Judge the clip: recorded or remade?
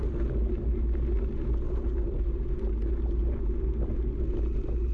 recorded